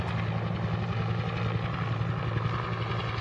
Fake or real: real